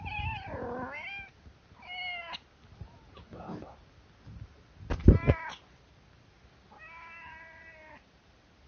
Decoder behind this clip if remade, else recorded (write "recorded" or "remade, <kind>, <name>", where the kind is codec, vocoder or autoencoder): recorded